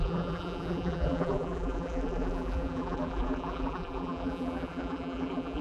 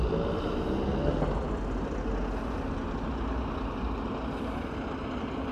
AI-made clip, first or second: first